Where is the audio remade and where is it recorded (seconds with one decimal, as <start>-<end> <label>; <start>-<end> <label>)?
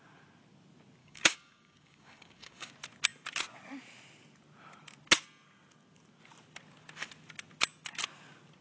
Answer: 0.0-1.0 recorded; 1.0-2.7 remade; 2.7-8.6 recorded